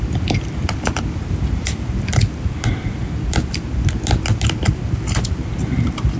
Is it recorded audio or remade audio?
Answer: remade